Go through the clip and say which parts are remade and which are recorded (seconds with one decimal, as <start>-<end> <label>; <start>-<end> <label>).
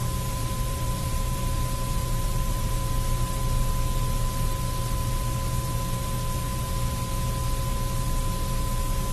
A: 0.0-1.6 remade; 1.6-2.0 recorded; 2.0-2.7 remade; 2.7-9.1 recorded